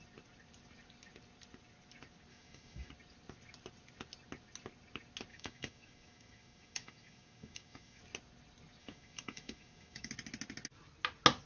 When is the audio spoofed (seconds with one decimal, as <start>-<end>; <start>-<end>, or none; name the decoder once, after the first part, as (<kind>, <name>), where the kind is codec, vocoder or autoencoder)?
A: 2.3-2.9 (autoencoder, DAC-VAE); 5.3-8.0; 8.8-10.1

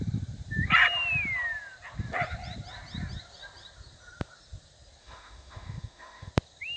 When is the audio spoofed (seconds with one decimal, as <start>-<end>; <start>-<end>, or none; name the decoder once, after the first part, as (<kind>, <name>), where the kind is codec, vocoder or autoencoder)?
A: 5.0-6.3 (autoencoder, DAC-VAE)

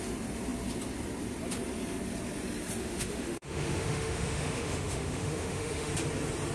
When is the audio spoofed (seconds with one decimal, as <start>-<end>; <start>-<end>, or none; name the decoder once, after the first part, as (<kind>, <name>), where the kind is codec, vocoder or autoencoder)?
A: 2.8-5.9 (autoencoder, DAC-VAE)

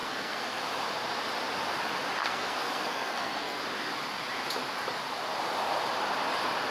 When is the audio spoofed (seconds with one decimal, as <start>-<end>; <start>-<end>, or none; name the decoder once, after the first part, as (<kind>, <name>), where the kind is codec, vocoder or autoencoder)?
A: 0.0-0.6 (codec, SNAC); 2.2-3.6